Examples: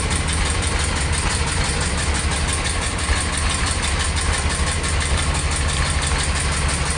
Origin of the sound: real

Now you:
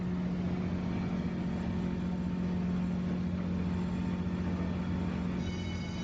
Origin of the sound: real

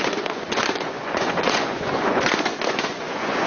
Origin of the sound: fake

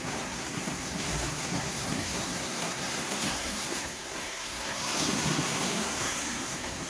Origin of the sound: fake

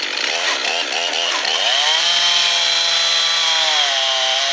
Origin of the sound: fake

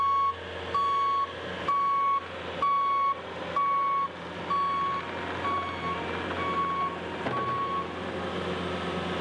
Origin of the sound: real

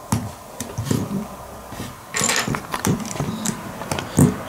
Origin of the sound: real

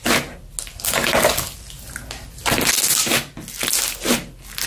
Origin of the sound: real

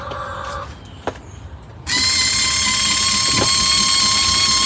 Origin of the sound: real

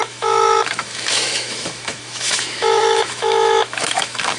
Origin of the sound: fake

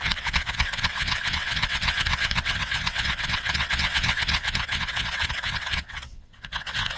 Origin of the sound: fake